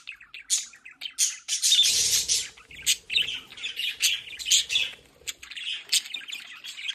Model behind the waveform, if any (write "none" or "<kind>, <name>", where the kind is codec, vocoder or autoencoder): none